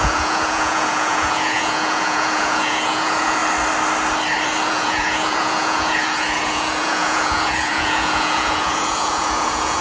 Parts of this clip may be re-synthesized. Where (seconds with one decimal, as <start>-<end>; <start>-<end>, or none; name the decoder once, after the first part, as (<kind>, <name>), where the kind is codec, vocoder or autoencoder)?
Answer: 0.0-3.4 (vocoder, Vocos); 4.7-9.8